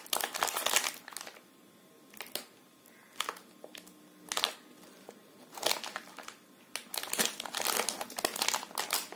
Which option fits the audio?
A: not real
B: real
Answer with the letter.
B